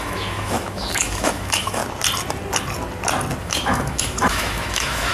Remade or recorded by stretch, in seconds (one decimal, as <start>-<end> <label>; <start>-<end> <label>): 0.0-1.8 remade; 1.8-3.4 recorded; 3.4-5.1 remade